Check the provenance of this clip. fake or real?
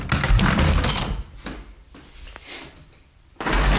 real